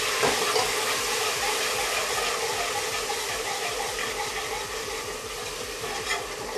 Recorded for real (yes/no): yes